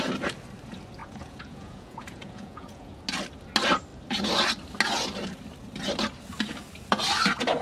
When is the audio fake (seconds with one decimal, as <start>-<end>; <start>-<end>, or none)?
1.0-3.0